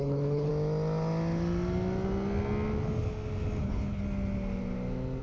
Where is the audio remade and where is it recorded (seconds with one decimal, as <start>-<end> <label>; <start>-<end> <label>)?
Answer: 0.0-0.5 remade; 0.5-3.6 recorded; 3.6-4.0 remade; 4.0-5.2 recorded